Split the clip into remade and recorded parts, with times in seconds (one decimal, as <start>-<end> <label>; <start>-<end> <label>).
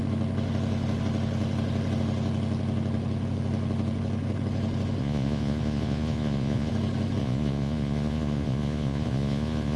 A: 0.0-5.0 recorded; 5.0-6.7 remade; 6.7-7.2 recorded; 7.2-9.8 remade